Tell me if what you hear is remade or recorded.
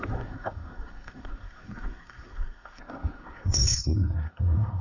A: remade